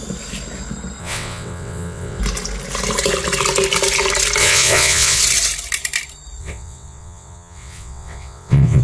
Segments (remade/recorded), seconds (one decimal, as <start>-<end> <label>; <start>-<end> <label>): 0.0-1.0 recorded; 1.0-2.2 remade; 2.2-4.4 recorded; 4.4-5.2 remade; 5.2-6.4 recorded; 6.4-8.8 remade